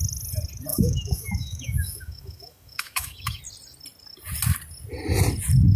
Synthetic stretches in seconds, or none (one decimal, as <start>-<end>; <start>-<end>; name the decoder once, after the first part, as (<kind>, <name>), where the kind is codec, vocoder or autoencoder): 0.7-3.4 (autoencoder, DAC-VAE)